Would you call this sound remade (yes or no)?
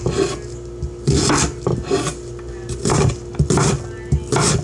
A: no